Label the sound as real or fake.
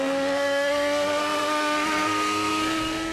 fake